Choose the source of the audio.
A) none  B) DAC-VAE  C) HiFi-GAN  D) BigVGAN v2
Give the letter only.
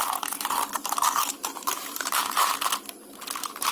D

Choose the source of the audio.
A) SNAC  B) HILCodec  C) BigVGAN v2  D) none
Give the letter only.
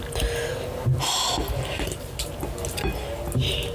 D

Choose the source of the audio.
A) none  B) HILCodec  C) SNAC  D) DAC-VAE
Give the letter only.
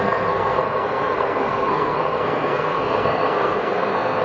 C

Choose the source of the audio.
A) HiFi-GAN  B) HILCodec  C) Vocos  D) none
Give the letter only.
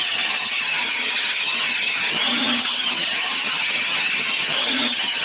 A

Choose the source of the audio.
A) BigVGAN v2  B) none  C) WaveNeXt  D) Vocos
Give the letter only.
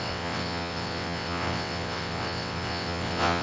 C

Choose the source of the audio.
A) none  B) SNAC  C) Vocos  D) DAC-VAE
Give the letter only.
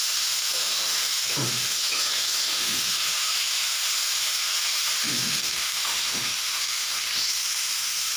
D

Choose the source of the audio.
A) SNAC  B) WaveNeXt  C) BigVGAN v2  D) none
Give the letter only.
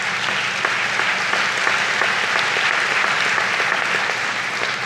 D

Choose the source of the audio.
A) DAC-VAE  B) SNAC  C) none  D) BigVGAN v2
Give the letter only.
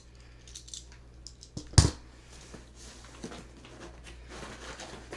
C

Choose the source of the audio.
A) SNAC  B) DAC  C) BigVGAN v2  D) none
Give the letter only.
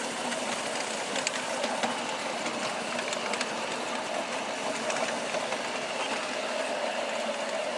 D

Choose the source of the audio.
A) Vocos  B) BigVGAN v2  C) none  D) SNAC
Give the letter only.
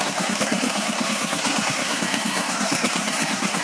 D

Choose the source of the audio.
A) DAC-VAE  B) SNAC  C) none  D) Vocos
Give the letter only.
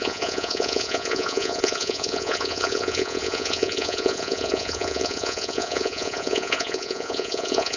D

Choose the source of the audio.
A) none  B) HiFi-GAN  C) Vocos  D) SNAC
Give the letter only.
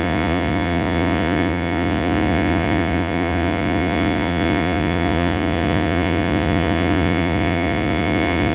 C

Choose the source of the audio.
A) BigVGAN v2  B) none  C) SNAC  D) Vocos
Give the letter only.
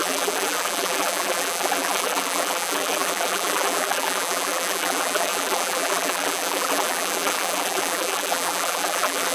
A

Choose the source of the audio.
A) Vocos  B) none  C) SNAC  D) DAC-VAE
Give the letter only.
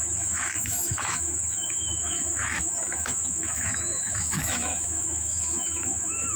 D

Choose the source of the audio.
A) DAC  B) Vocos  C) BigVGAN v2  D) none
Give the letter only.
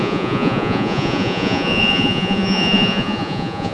B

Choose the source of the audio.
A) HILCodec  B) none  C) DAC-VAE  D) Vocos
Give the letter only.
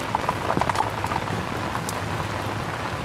B